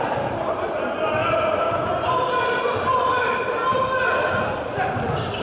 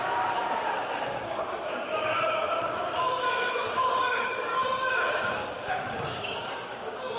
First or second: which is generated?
second